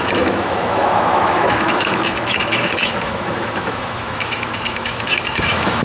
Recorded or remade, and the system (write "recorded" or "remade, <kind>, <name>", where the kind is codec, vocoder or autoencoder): remade, autoencoder, DAC-VAE